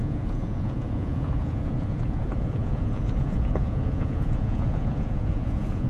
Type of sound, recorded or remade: remade